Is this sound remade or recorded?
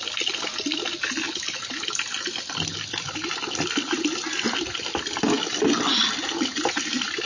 recorded